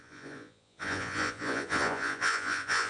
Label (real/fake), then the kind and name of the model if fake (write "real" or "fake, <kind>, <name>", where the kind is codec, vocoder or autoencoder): fake, vocoder, Vocos